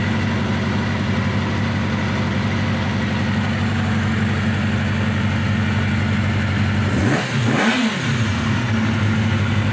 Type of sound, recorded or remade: recorded